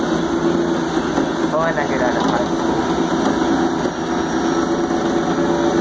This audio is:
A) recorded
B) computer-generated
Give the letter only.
A